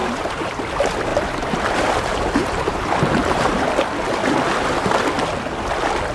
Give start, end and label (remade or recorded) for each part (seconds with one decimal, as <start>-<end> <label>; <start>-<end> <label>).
0.0-0.6 remade; 0.6-2.4 recorded; 2.4-3.7 remade; 3.7-6.1 recorded